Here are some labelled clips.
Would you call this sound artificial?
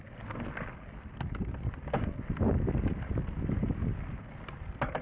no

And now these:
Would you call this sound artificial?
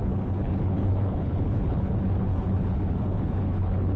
yes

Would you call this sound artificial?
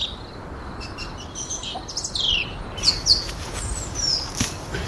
no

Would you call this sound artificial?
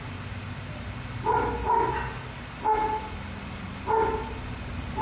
no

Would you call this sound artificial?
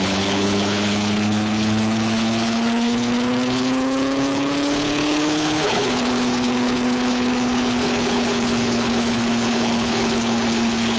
yes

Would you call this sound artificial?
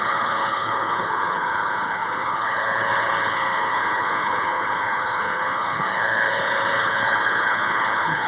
yes